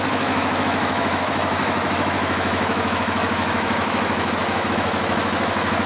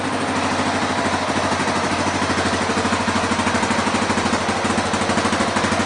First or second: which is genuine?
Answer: second